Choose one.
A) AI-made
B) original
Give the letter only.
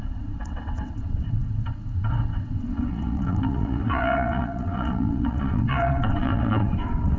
A